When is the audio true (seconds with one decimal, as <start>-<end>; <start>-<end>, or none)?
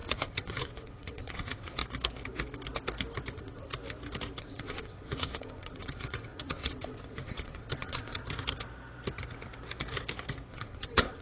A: 1.8-3.3; 3.7-4.4; 8.2-10.5